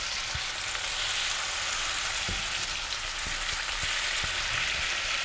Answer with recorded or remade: recorded